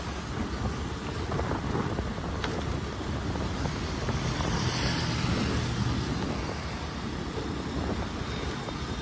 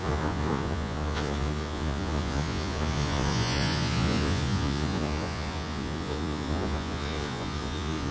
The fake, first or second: second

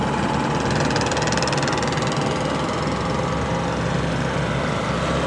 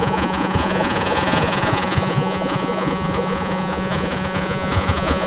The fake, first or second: second